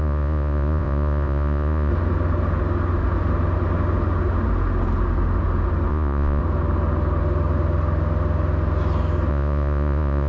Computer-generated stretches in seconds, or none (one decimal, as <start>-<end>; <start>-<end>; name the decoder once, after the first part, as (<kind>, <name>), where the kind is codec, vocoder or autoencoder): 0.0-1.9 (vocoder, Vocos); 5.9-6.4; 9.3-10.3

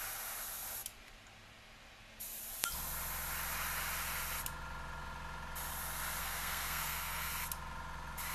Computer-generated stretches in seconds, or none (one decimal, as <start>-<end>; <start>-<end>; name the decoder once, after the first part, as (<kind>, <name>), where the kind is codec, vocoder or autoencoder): 6.2-7.3 (codec, SNAC)

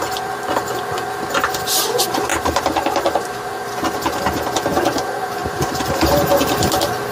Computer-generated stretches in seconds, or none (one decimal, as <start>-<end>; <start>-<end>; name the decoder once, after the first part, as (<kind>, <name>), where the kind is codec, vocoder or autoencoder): 2.3-3.5 (vocoder, BigVGAN v2); 5.4-7.1

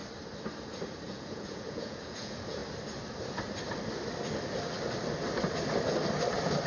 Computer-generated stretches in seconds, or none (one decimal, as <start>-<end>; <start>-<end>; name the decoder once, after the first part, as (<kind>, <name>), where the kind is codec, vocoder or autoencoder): 1.1-2.6 (vocoder, Vocos)